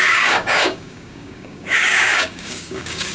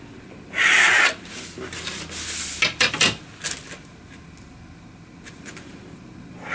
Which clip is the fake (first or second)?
first